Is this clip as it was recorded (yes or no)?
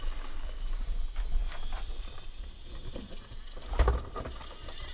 yes